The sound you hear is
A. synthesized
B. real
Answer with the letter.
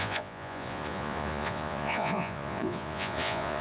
A